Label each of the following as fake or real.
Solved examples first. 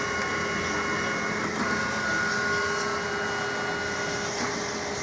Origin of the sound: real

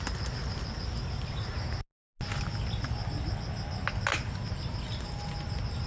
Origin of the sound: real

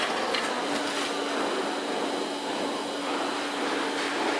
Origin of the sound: real